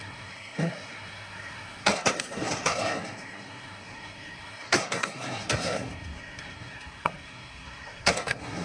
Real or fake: fake